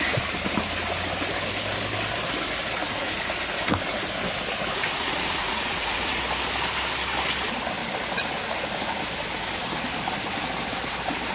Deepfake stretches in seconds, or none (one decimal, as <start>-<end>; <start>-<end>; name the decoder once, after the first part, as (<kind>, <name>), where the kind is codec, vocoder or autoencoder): 2.8-3.4 (vocoder, Vocos); 4.8-6.2